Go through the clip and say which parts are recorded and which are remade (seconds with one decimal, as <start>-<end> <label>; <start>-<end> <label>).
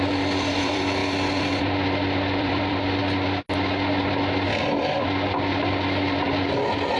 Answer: 0.0-1.0 remade; 1.0-1.7 recorded; 1.7-3.0 remade; 3.0-7.0 recorded